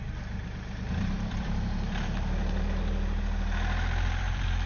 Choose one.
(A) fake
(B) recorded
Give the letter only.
A